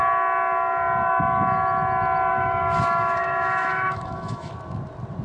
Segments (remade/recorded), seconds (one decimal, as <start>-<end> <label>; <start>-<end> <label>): 0.0-2.3 recorded; 2.3-4.5 remade; 4.5-5.2 recorded